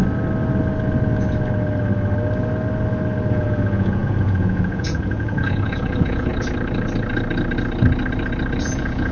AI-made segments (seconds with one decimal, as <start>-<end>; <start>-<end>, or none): 3.3-6.3; 8.6-9.1